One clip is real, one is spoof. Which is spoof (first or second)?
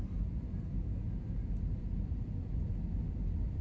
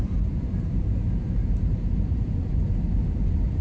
second